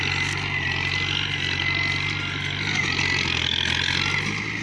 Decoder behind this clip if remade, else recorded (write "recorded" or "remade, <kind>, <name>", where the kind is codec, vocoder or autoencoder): recorded